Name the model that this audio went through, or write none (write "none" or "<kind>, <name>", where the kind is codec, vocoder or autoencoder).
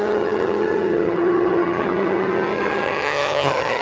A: vocoder, HiFi-GAN